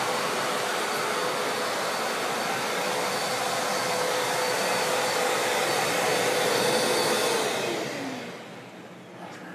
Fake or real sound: real